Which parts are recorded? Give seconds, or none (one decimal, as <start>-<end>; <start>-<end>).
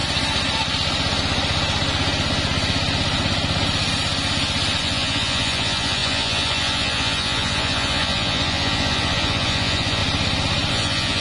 0.0-4.8; 10.0-10.7